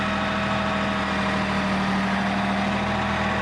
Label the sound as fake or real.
real